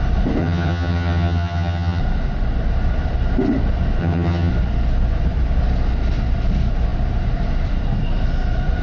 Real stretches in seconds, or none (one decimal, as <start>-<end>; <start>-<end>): 0.0-0.4; 2.0-4.0; 4.5-8.8